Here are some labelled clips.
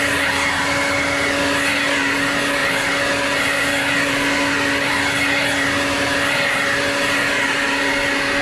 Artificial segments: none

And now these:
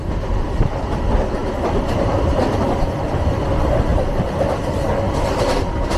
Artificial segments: 3.9-4.9 (vocoder, BigVGAN v2)